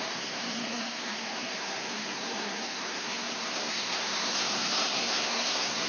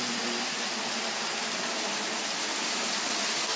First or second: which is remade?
first